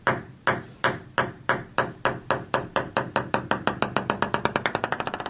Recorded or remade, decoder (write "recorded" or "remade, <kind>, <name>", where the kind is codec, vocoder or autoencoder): recorded